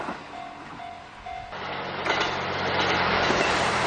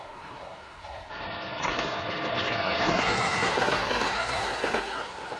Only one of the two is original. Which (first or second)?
first